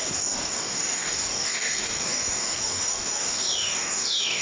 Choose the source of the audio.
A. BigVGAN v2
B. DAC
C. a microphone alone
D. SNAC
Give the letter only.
B